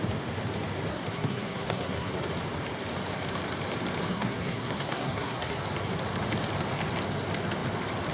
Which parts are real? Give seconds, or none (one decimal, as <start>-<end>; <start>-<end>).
0.0-0.9; 2.1-4.1; 5.6-8.1